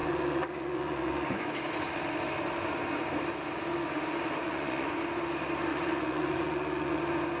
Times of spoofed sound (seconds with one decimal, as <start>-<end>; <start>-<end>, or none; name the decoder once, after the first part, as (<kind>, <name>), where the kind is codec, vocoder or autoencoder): 0.0-1.5 (vocoder, Vocos); 4.4-5.0; 5.7-7.0